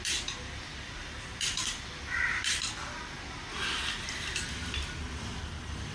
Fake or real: fake